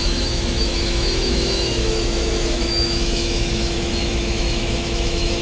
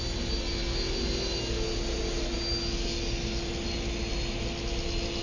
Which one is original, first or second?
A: second